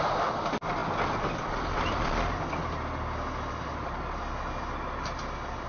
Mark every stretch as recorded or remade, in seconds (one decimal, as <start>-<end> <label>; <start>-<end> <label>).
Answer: 0.0-5.7 recorded